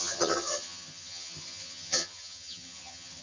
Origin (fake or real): fake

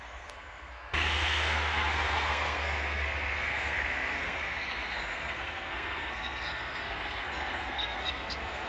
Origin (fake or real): fake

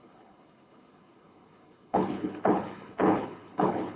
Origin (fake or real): fake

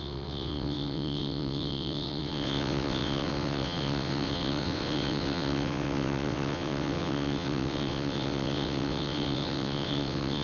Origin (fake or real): fake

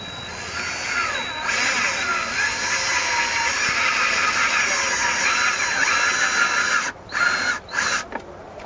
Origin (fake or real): real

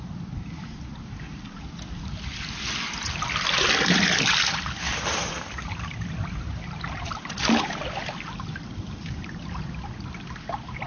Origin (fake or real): real